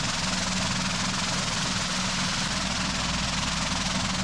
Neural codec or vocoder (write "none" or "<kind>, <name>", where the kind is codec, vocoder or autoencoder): none